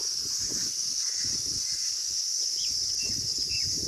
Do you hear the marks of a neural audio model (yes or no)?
no